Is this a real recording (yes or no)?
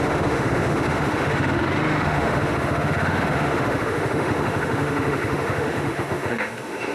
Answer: no